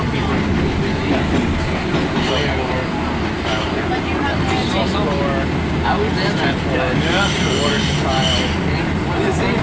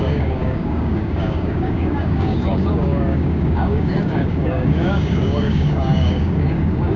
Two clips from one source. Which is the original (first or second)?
first